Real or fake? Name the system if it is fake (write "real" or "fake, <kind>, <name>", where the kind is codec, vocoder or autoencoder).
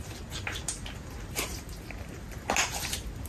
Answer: real